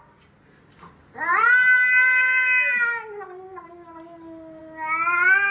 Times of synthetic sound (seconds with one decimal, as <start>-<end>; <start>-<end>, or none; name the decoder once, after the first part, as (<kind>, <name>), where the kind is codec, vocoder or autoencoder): none